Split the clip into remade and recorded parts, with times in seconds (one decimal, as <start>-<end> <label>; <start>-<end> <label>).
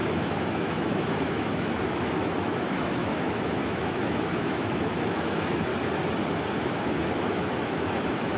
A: 0.0-5.7 remade; 5.7-6.5 recorded; 6.5-8.4 remade